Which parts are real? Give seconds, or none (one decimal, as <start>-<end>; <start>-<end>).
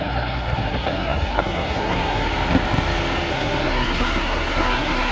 2.3-3.3